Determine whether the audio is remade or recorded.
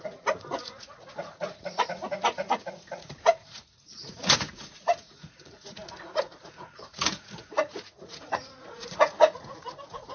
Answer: remade